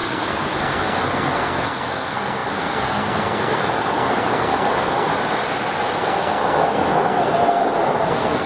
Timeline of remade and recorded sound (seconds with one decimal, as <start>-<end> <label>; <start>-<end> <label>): 0.0-5.1 remade; 5.1-6.0 recorded; 6.0-8.5 remade